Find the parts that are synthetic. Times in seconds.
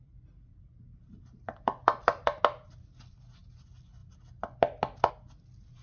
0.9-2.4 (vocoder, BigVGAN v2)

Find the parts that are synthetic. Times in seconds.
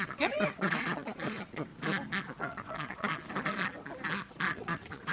0.0-1.7 (vocoder, WaveNeXt); 2.4-3.1; 4.5-5.1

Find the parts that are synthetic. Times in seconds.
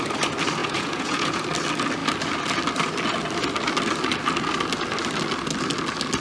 0.6-1.4 (vocoder, Vocos)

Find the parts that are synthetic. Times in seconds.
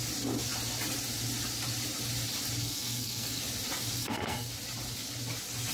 2.6-3.4 (codec, SNAC); 4.0-4.5